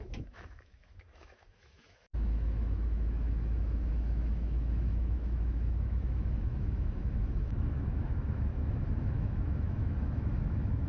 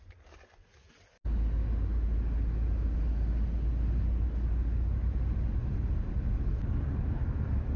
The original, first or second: second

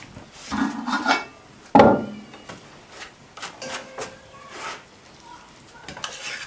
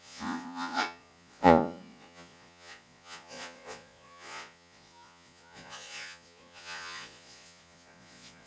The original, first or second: first